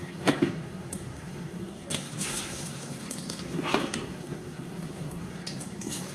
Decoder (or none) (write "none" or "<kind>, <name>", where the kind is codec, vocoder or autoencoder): codec, SNAC